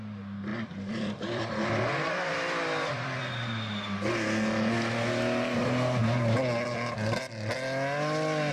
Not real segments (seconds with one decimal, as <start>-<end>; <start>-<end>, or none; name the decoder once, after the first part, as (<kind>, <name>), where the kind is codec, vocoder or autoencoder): 0.5-3.2 (vocoder, BigVGAN v2)